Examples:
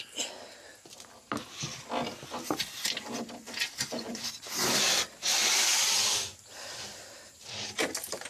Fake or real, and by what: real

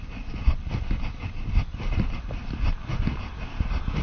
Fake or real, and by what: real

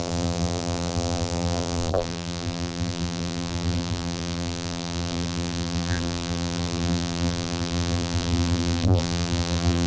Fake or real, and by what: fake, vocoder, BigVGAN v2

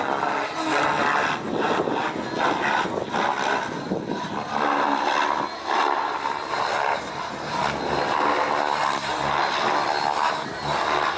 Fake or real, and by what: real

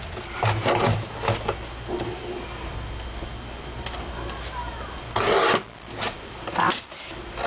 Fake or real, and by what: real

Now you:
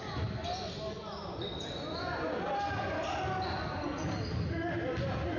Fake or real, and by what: real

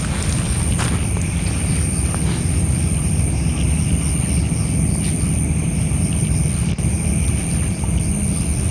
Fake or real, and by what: real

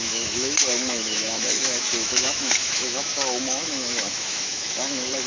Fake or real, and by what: fake, autoencoder, DAC-VAE